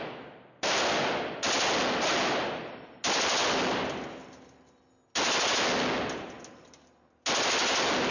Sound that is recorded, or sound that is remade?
recorded